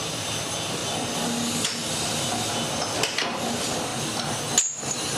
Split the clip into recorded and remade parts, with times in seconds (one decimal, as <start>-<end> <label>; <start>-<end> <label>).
0.0-5.2 recorded